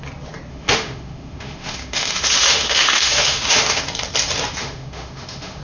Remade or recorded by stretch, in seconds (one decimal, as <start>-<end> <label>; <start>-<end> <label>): 0.0-0.5 recorded; 0.5-3.8 remade; 3.8-4.6 recorded; 4.6-5.6 remade